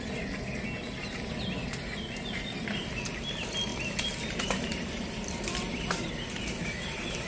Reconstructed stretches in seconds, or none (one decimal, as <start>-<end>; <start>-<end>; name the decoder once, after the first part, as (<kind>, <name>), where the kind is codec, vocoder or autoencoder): 3.7-6.1 (vocoder, BigVGAN v2)

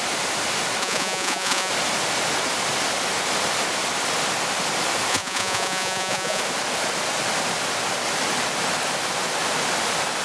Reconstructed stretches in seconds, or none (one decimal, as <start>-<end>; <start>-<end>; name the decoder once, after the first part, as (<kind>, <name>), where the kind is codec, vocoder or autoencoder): 0.8-1.7 (vocoder, Vocos); 5.1-6.4

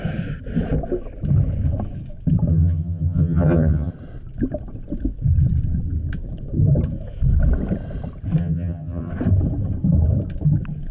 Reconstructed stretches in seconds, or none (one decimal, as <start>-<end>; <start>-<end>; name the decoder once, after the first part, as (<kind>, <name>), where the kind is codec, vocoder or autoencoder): 2.5-3.9 (vocoder, HiFi-GAN); 8.4-9.1

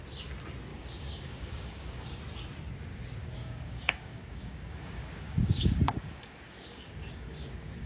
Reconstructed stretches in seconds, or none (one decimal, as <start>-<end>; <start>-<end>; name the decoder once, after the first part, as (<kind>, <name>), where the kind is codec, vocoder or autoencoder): 0.7-2.2 (codec, DAC); 3.2-7.9

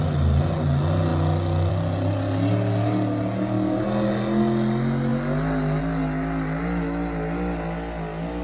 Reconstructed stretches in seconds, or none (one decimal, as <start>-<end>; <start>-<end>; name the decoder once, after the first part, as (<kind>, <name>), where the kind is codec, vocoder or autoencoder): none

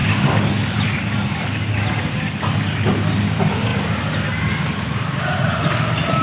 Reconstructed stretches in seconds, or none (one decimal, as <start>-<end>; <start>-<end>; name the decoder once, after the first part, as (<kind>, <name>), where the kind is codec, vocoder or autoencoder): 3.7-5.5 (vocoder, BigVGAN v2)

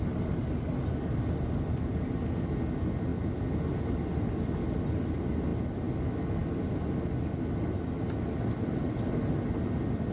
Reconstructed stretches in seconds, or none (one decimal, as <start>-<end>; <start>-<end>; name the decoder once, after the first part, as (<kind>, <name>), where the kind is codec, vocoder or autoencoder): none